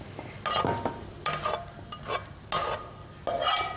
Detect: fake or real real